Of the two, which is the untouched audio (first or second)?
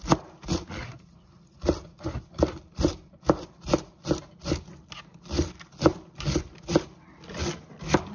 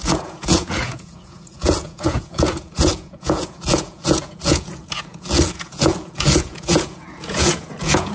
first